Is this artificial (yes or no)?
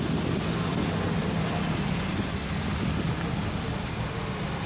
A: no